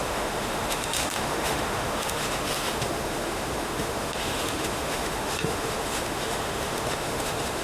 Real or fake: fake